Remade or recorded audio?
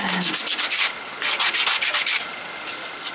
recorded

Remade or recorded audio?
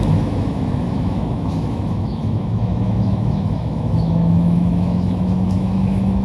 remade